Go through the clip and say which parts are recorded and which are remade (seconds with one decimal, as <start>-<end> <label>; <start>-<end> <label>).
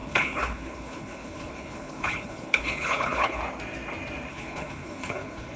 0.0-3.4 remade; 3.4-4.3 recorded; 4.3-5.6 remade